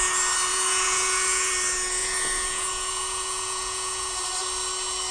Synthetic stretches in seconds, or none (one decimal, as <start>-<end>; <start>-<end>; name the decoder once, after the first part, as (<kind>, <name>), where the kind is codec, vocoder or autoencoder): 0.5-1.5 (vocoder, Vocos); 2.0-4.1